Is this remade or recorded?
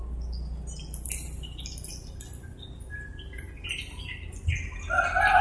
recorded